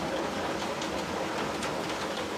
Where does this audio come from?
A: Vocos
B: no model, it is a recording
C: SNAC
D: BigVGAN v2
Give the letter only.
B